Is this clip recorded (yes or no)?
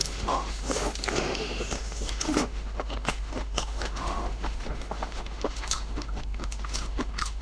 no